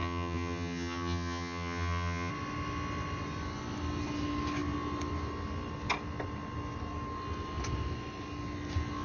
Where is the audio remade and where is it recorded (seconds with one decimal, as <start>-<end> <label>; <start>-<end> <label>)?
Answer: 0.0-2.3 remade; 2.3-9.0 recorded

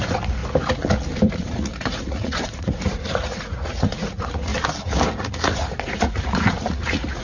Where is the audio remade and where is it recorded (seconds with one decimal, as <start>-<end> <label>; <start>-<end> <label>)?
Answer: 0.0-0.4 remade; 0.4-1.3 recorded; 1.3-4.5 remade; 4.5-5.1 recorded; 5.1-7.2 remade

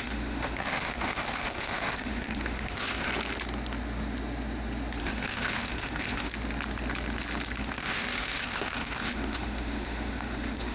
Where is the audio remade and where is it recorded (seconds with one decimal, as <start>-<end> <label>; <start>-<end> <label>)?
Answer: 0.0-3.1 remade; 3.1-5.0 recorded; 5.0-6.3 remade; 6.3-7.6 recorded; 7.6-10.7 remade

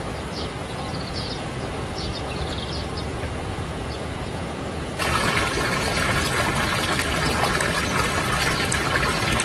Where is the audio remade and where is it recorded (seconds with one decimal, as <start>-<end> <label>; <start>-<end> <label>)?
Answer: 0.0-0.6 recorded; 0.6-2.6 remade; 2.6-3.1 recorded; 3.1-6.4 remade; 6.4-9.4 recorded

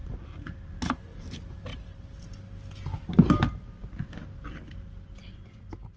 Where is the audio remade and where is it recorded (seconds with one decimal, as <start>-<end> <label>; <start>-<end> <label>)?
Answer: 0.0-0.6 remade; 0.6-6.0 recorded

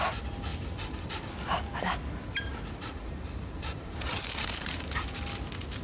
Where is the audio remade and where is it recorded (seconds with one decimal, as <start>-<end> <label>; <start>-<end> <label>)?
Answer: 0.0-0.5 recorded; 0.5-1.3 remade; 1.3-2.9 recorded; 2.9-5.2 remade; 5.2-5.8 recorded

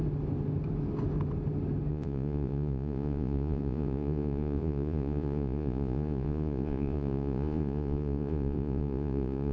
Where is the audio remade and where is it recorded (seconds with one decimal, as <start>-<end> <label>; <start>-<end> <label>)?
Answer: 0.0-1.9 recorded; 1.9-9.5 remade